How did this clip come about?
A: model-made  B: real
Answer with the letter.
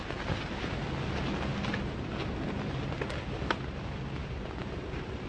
B